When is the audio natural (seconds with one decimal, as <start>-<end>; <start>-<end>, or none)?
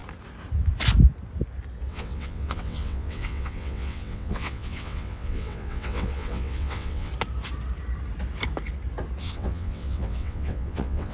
0.0-1.9; 7.1-9.2